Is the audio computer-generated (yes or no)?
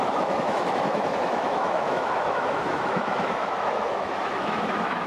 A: yes